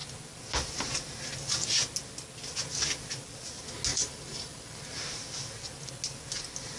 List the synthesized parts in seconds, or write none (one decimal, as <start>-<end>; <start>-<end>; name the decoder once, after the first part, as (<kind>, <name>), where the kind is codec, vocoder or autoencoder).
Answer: 3.9-4.8 (vocoder, BigVGAN v2)